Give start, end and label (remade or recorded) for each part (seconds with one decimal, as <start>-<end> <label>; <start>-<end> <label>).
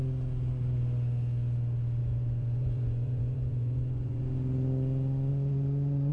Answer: 0.0-2.0 recorded; 2.0-4.2 remade; 4.2-5.3 recorded; 5.3-6.1 remade